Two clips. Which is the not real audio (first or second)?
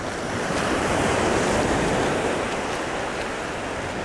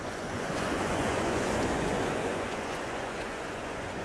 second